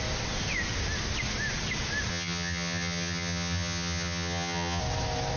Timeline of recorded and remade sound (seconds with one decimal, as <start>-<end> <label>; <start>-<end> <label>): 0.0-2.1 recorded; 2.1-4.8 remade; 4.8-5.4 recorded